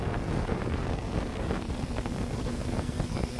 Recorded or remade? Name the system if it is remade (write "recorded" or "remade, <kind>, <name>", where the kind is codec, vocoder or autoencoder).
remade, codec, SNAC